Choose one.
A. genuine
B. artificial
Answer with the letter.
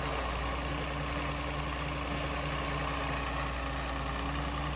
A